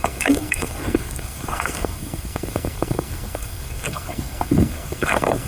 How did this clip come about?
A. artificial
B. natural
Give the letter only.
A